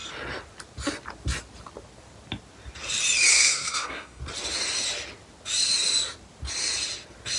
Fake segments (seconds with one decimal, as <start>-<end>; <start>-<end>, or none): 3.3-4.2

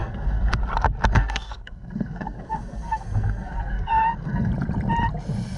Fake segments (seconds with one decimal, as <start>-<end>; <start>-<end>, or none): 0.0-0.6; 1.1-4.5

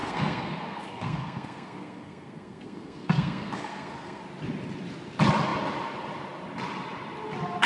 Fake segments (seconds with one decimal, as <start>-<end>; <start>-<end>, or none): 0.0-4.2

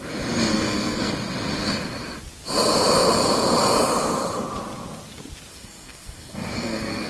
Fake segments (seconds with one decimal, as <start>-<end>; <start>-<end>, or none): 0.5-1.1; 5.5-7.1

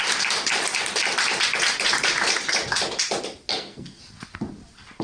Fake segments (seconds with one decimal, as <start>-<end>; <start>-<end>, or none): 3.5-4.0